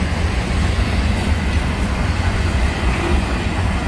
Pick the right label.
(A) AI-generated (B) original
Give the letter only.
A